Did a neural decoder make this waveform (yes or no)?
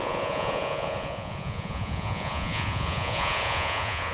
yes